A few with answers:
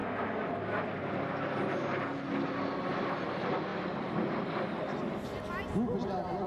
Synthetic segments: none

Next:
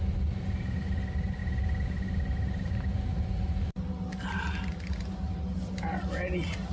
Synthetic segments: none

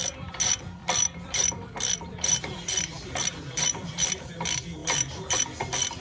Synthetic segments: 0.8-4.3 (vocoder, BigVGAN v2)